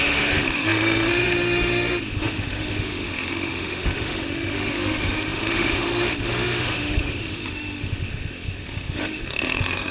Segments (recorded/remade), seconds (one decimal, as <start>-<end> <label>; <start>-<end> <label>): 0.0-9.9 remade